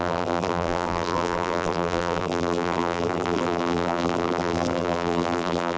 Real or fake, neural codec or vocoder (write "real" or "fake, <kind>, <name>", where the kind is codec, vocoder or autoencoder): fake, vocoder, BigVGAN v2